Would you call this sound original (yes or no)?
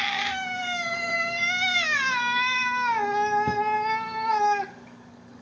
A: no